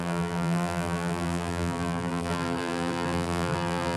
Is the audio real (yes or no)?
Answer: no